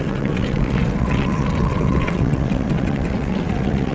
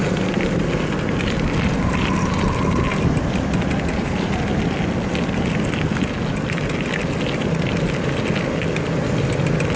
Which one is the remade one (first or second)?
first